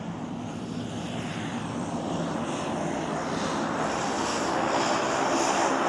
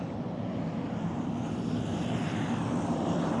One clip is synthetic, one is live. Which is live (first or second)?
first